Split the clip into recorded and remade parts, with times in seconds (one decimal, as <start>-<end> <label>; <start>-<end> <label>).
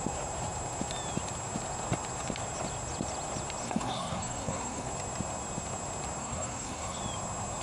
0.0-3.6 recorded; 3.6-4.9 remade; 4.9-6.2 recorded; 6.2-7.0 remade; 7.0-7.6 recorded